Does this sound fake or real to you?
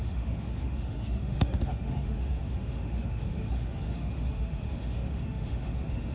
fake